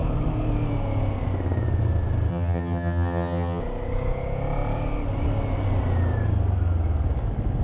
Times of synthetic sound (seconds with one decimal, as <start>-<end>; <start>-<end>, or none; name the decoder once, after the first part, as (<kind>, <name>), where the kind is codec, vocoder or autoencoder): 2.3-3.6 (vocoder, HiFi-GAN)